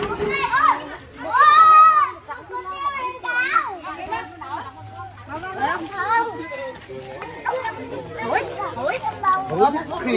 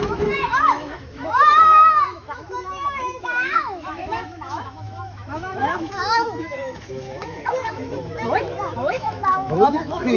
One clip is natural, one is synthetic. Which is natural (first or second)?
first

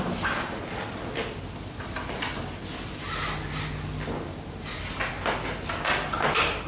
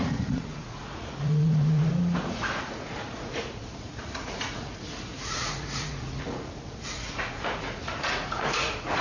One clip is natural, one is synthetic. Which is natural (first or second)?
first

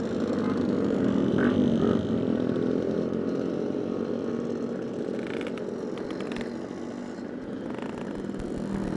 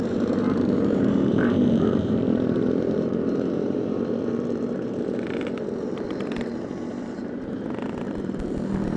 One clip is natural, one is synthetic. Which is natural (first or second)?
first